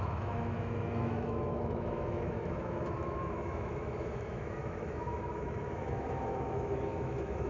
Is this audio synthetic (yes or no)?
yes